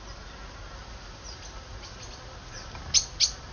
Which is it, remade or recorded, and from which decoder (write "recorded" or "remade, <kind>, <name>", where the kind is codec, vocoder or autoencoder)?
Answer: recorded